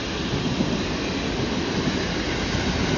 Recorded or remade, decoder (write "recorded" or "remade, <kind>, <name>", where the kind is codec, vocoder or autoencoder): recorded